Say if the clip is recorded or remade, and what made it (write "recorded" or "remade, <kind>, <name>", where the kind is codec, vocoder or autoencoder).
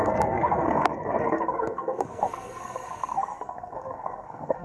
remade, codec, SNAC